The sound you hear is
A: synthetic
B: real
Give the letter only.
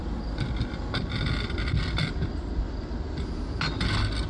B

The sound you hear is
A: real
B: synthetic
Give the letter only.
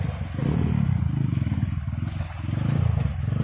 A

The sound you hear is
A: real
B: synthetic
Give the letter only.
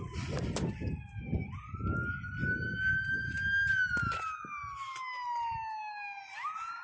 A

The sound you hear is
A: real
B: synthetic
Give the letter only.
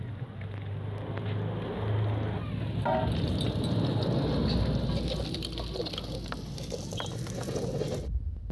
A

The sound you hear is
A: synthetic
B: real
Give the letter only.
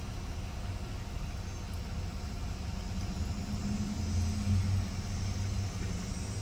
B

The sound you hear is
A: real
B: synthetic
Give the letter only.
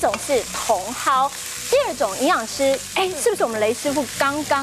A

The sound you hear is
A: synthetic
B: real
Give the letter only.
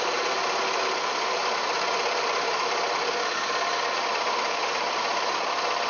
B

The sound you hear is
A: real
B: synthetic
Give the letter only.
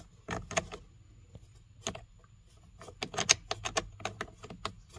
A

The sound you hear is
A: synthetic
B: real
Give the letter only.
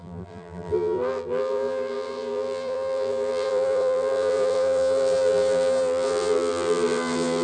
A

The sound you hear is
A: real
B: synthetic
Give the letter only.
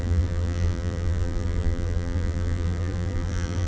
B